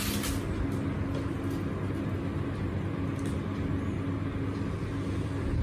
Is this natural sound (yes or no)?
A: yes